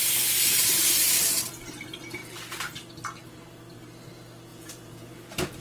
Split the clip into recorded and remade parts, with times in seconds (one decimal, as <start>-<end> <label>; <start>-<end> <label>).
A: 0.0-4.5 recorded; 4.5-5.6 remade